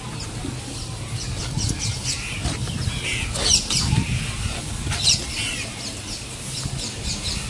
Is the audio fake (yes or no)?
no